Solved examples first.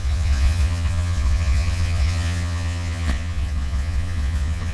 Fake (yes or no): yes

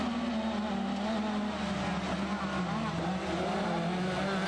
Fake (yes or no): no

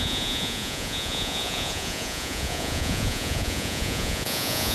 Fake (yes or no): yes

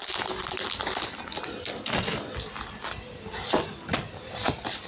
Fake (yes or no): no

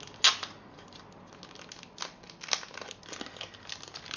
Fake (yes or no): no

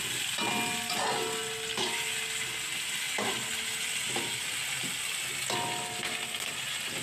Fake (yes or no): no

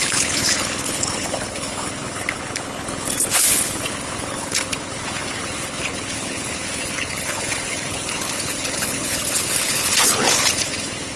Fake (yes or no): yes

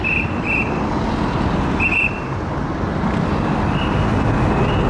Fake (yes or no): no